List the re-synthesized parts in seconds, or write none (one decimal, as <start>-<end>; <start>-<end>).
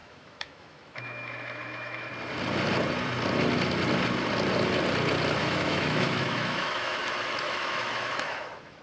0.0-2.1; 5.4-8.8